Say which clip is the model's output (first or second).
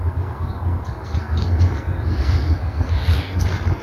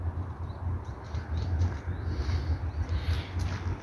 first